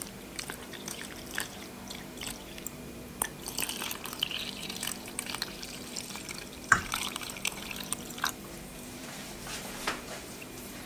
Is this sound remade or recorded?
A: remade